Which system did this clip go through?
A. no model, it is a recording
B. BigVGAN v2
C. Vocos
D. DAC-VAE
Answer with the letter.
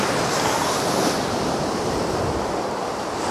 A